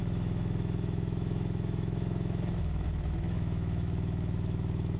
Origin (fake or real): fake